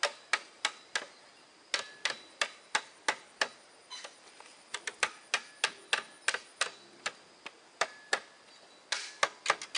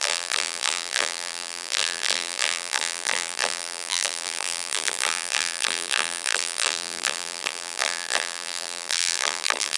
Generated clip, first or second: second